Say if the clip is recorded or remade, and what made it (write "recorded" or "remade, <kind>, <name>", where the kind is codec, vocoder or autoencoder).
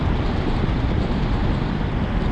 recorded